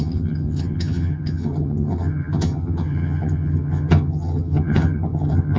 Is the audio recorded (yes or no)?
no